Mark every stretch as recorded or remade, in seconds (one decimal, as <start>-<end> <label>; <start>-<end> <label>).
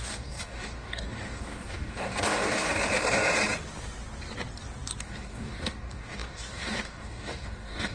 0.0-2.8 remade; 2.8-5.0 recorded; 5.0-7.9 remade